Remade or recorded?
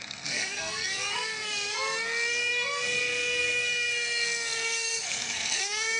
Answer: remade